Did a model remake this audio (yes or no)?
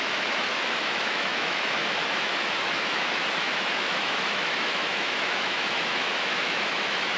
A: yes